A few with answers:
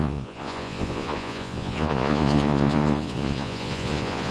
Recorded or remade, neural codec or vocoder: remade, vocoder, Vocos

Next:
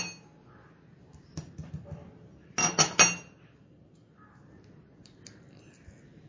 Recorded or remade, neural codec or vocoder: recorded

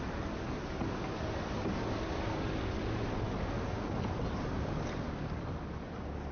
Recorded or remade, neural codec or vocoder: recorded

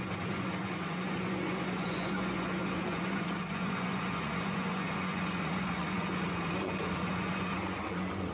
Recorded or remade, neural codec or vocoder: remade, vocoder, Vocos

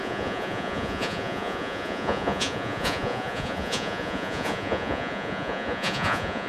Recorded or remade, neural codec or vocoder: remade, vocoder, Vocos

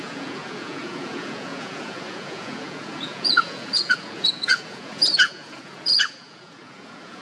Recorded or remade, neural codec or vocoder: remade, vocoder, Vocos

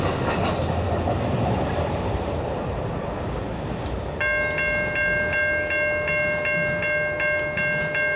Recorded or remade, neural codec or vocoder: recorded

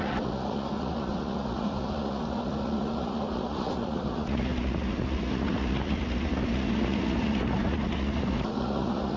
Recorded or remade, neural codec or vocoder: remade, vocoder, Vocos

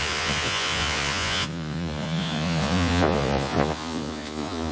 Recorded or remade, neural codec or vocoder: remade, vocoder, Vocos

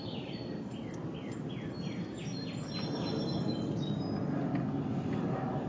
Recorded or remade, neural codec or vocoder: recorded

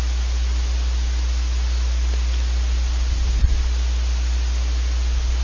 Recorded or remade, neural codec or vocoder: recorded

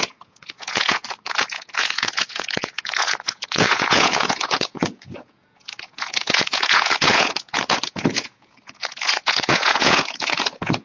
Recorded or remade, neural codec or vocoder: remade, vocoder, Vocos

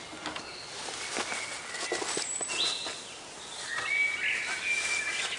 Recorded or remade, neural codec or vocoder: recorded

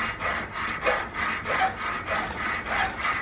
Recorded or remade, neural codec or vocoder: recorded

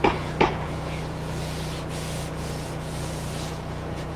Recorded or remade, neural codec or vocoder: remade, vocoder, Vocos